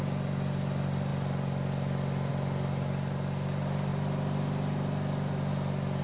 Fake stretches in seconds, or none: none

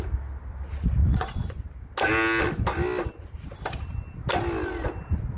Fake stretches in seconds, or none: 1.0-1.6 (vocoder, Vocos)

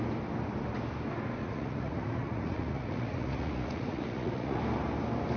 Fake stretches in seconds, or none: 1.4-4.6 (vocoder, Vocos)

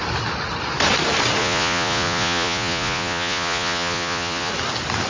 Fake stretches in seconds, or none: 1.4-4.5 (vocoder, Vocos)

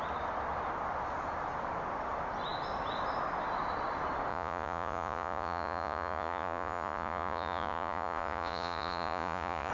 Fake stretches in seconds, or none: 4.3-9.7 (vocoder, Vocos)

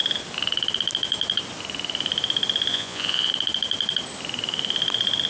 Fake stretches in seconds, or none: 2.7-3.3 (vocoder, Vocos)

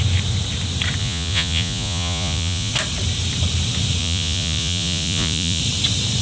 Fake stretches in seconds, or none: 1.0-2.7 (vocoder, Vocos); 4.0-5.6